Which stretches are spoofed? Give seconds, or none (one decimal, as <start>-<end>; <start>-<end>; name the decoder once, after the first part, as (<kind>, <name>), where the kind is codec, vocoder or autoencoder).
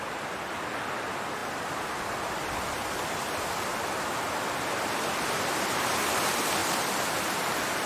0.0-7.9 (vocoder, BigVGAN v2)